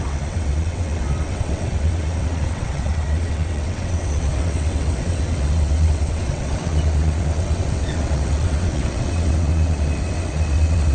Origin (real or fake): fake